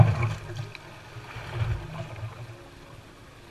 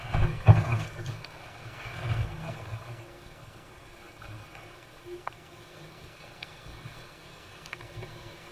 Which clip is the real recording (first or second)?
first